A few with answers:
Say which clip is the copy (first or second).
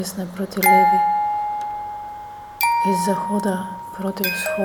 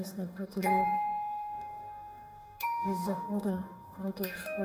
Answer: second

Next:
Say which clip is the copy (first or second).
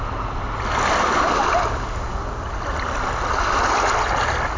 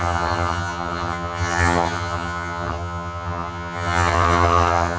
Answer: second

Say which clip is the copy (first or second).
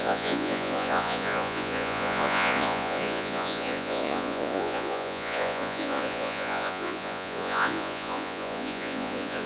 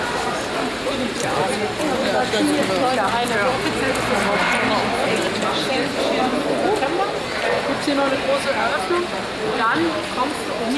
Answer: first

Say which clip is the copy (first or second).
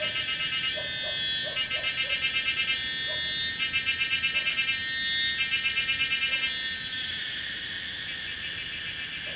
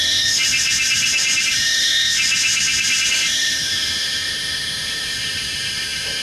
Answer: second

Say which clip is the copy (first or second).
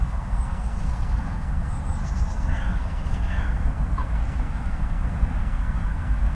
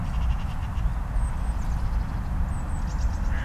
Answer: first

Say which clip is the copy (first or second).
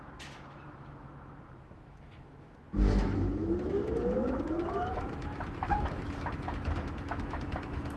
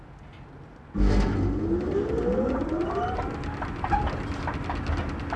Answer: first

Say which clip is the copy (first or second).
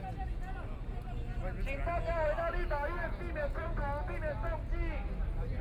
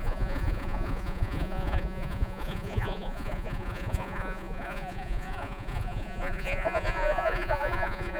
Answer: second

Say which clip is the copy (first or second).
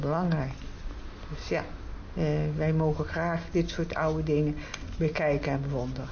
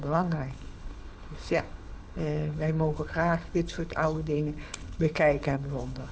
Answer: second